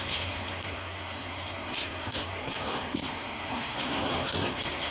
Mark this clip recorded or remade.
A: remade